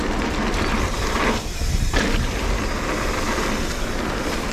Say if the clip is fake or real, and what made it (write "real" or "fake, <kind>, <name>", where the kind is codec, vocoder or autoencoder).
real